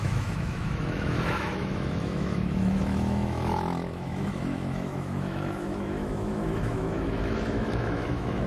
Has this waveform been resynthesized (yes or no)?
yes